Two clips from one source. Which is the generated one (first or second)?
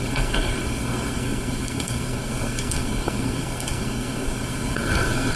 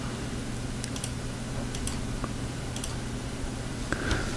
first